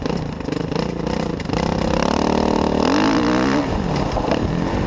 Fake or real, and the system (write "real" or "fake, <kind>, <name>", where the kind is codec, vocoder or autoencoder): real